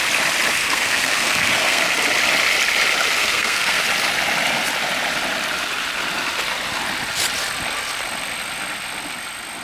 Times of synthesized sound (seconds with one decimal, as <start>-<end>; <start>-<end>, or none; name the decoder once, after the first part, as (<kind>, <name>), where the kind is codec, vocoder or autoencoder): 0.6-1.8 (codec, SNAC); 3.2-3.8